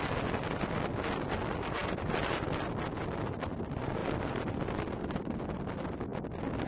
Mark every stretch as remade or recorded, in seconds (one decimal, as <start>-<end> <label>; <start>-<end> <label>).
0.0-1.8 recorded; 1.8-3.6 remade; 3.6-4.0 recorded; 4.0-5.4 remade; 5.4-6.7 recorded